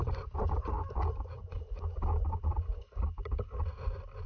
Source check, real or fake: real